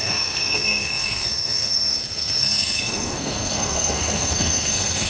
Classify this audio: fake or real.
fake